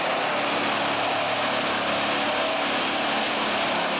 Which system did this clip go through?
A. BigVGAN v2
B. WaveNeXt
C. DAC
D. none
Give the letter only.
D